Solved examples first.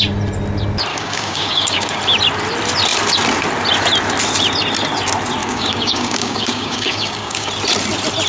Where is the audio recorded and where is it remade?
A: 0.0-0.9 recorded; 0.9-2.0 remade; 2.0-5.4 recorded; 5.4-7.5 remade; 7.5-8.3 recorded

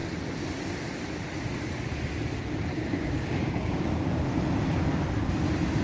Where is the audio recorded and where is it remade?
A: 0.0-2.7 recorded; 2.7-4.3 remade; 4.3-5.8 recorded

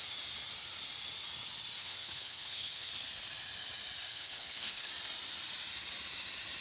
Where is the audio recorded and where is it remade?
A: 0.0-1.8 recorded; 1.8-2.9 remade; 2.9-4.1 recorded; 4.1-4.9 remade; 4.9-6.6 recorded

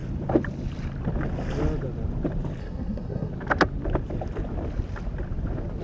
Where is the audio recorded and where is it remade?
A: 0.0-2.6 recorded; 2.6-3.3 remade; 3.3-5.8 recorded

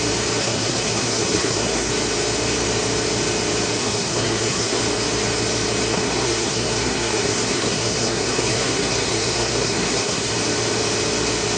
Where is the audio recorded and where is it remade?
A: 0.0-0.4 recorded; 0.4-1.9 remade; 1.9-3.8 recorded; 3.8-4.8 remade; 4.8-5.9 recorded; 5.9-10.3 remade; 10.3-11.6 recorded

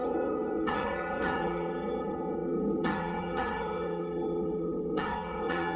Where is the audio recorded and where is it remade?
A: 0.0-5.8 remade

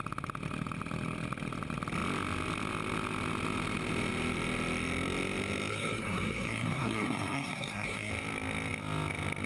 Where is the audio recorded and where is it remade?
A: 0.0-5.7 recorded; 5.7-8.1 remade; 8.1-9.5 recorded

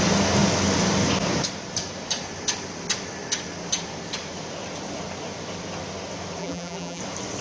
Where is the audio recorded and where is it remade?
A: 0.0-6.4 recorded; 6.4-7.0 remade; 7.0-7.4 recorded